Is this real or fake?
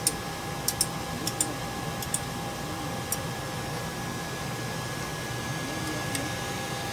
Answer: real